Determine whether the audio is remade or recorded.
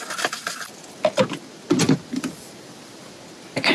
recorded